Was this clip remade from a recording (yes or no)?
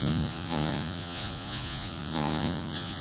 yes